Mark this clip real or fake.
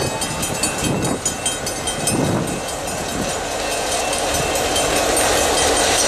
real